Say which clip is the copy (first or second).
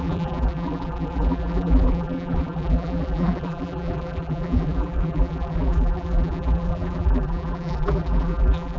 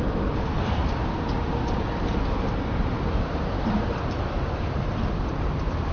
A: first